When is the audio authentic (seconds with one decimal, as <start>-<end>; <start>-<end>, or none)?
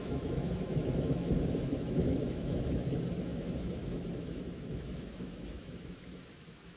none